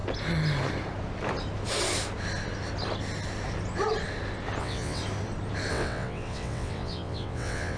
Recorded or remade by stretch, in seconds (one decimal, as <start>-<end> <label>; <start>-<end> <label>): 0.0-4.6 recorded; 4.6-5.0 remade; 5.0-5.7 recorded; 5.7-7.8 remade